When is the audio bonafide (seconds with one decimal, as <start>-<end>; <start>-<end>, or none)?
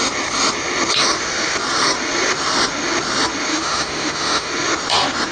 0.0-3.5; 4.5-5.3